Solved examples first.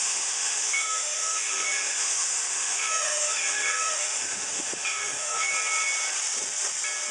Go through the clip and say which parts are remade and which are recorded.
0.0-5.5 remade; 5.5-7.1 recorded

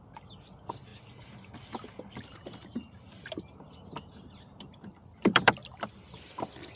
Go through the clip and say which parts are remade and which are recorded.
0.0-5.6 remade; 5.6-6.8 recorded